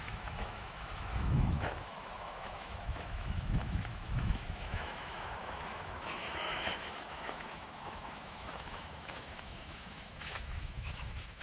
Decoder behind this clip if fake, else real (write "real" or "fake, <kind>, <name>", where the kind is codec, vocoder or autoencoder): fake, autoencoder, DAC-VAE